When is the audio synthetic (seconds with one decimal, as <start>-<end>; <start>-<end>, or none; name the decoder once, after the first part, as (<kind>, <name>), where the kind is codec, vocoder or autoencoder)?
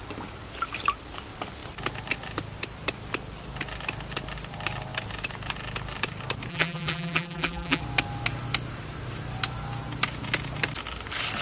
6.5-7.8 (vocoder, BigVGAN v2)